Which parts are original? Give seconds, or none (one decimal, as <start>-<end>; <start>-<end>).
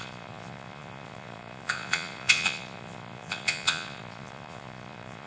none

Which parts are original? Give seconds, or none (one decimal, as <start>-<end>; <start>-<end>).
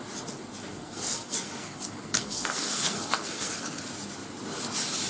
0.0-0.7; 3.8-5.1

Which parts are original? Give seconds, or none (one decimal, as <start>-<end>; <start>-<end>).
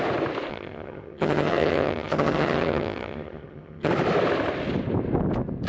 0.0-0.5; 3.9-5.7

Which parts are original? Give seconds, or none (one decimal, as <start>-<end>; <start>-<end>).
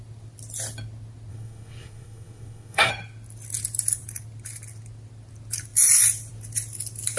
0.0-1.3; 2.9-7.2